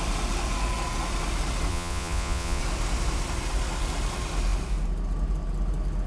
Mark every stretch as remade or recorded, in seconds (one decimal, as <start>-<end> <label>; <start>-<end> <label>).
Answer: 0.0-1.7 recorded; 1.7-2.6 remade; 2.6-6.1 recorded